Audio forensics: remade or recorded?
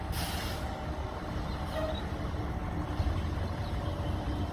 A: recorded